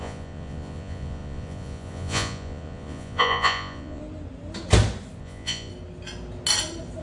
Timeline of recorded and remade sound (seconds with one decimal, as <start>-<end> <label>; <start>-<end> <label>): 0.0-4.0 remade; 4.0-5.2 recorded; 5.2-5.7 remade; 5.7-7.0 recorded

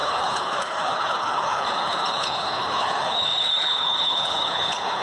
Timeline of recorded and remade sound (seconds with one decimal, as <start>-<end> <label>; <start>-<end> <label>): 0.0-5.0 remade

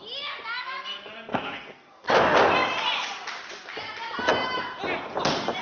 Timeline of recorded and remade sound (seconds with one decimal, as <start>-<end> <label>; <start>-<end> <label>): 0.0-1.3 recorded; 1.3-2.0 remade; 2.0-5.6 recorded

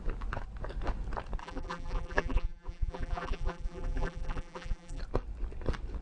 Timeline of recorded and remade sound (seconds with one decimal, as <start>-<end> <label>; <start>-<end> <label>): 0.0-1.4 recorded; 1.4-5.0 remade; 5.0-6.0 recorded

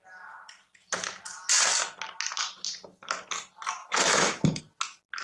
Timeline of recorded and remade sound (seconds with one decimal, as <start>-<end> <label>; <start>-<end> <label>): 0.0-3.8 recorded; 3.8-4.6 remade; 4.6-5.2 recorded

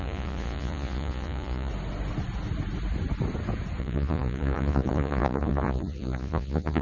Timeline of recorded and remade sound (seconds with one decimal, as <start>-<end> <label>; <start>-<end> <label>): 0.0-1.7 remade; 1.7-3.8 recorded; 3.8-6.8 remade